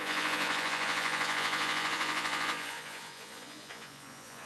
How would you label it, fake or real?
fake